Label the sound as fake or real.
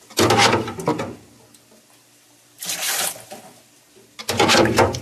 real